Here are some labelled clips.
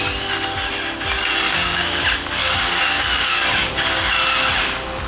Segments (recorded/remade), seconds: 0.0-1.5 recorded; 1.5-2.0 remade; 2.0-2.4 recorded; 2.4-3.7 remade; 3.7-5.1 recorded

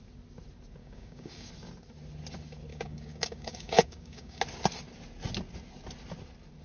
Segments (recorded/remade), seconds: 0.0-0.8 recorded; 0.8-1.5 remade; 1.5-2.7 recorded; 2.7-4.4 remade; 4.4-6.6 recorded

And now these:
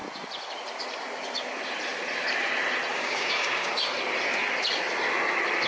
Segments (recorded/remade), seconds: 0.0-2.9 recorded; 2.9-3.7 remade; 3.7-5.7 recorded

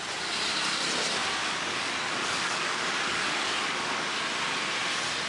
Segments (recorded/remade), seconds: 0.0-1.4 recorded; 1.4-4.1 remade; 4.1-5.3 recorded